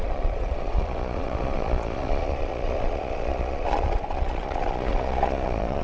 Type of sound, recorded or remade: remade